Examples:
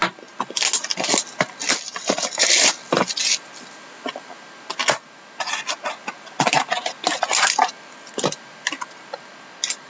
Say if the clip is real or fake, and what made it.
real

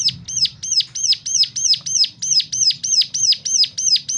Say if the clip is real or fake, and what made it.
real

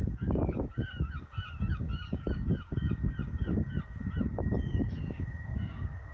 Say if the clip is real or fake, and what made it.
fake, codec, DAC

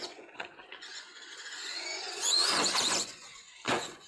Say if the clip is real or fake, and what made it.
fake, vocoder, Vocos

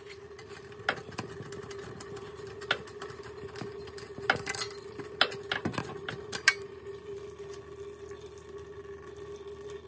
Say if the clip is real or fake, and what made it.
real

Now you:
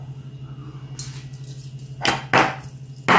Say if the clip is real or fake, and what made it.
real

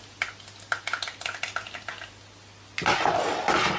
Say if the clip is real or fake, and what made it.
real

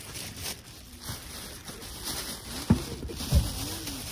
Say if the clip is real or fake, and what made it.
real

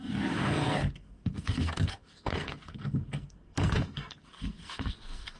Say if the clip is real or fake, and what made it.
fake, codec, SNAC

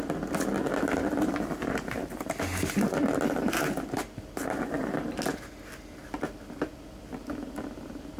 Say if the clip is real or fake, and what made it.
real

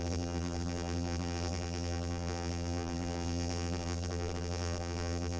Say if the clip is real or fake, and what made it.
fake, vocoder, BigVGAN v2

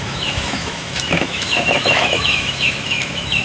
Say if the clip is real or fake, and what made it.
fake, autoencoder, DAC-VAE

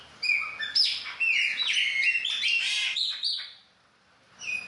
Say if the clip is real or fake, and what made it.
real